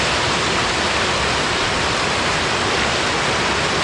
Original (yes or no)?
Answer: yes